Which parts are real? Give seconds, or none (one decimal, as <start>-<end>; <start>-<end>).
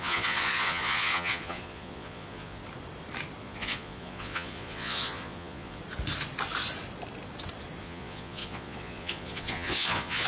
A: 2.6-3.4; 5.8-7.8